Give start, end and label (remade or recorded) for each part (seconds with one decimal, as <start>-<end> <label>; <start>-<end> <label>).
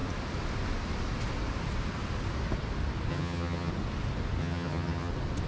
0.0-3.1 recorded; 3.1-3.7 remade; 3.7-4.4 recorded; 4.4-5.1 remade; 5.1-5.5 recorded